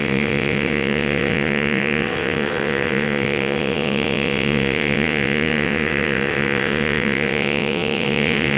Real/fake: fake